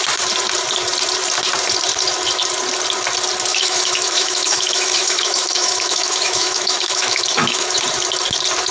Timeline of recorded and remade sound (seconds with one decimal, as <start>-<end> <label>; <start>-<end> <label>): 0.0-3.5 recorded; 3.5-7.7 remade; 7.7-8.7 recorded